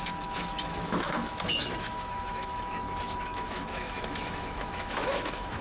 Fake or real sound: fake